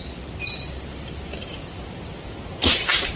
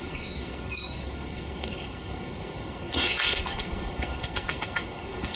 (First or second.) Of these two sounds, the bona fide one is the first